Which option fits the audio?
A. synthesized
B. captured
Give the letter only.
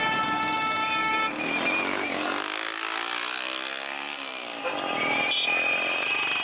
B